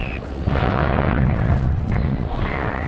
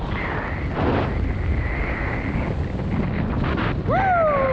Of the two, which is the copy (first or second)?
first